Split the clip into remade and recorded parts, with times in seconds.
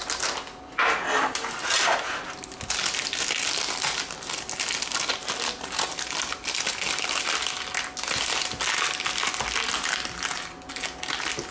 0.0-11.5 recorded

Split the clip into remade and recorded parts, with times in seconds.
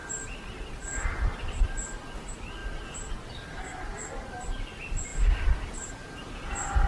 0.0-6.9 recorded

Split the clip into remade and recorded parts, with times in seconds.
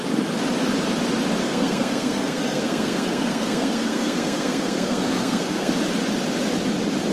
0.0-1.4 recorded; 1.4-5.7 remade; 5.7-7.1 recorded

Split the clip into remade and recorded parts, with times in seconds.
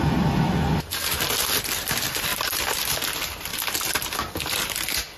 0.0-5.2 recorded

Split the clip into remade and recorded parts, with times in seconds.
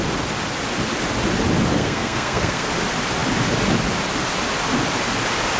0.0-1.7 recorded; 1.7-2.7 remade; 2.7-5.6 recorded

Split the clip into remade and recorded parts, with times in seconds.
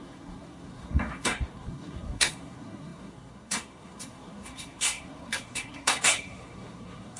0.0-7.2 remade